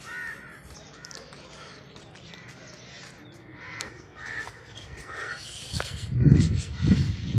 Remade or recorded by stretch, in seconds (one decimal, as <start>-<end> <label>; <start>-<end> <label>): 0.0-3.4 recorded; 3.4-7.4 remade